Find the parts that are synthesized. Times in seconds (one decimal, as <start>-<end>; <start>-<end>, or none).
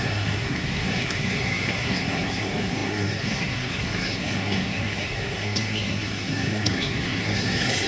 0.0-7.9